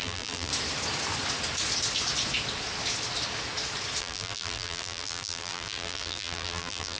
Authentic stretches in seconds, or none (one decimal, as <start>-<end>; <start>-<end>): 0.5-4.0